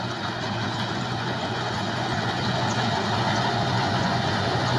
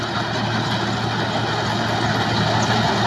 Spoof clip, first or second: first